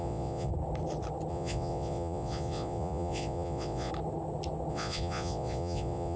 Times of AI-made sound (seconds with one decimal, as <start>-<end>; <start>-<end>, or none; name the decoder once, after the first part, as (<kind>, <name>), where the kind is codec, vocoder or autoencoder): 0.0-0.5 (vocoder, Vocos); 1.3-3.9; 4.7-6.2

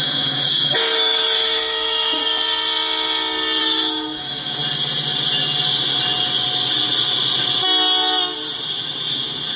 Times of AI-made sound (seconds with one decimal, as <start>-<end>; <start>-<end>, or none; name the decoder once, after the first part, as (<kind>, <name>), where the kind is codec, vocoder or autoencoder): 0.0-2.2 (autoencoder, DAC-VAE); 3.6-4.6; 8.6-9.6

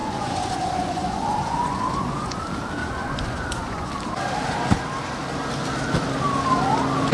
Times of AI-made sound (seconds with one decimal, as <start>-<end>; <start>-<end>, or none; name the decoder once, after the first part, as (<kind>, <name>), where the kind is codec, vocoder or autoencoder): 0.0-2.4 (vocoder, Vocos); 2.8-3.9

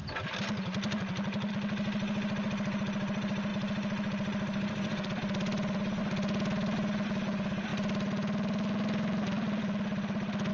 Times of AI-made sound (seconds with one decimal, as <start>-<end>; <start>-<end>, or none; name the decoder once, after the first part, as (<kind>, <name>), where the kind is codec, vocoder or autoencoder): none

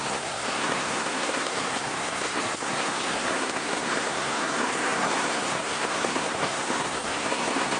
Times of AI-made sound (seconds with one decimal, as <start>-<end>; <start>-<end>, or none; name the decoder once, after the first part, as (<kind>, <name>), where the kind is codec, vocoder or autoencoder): 0.0-7.8 (codec, SNAC)

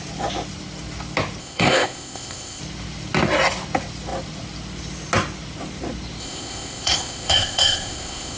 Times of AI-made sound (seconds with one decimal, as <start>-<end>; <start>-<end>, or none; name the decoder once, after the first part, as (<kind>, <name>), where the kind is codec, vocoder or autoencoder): 1.4-2.6 (codec, ZipCodec); 6.2-8.4

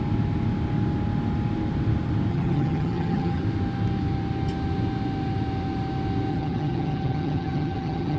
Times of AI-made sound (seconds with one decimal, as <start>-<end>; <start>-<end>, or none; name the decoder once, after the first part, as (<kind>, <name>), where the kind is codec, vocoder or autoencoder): 2.3-3.4 (vocoder, HiFi-GAN); 6.3-8.2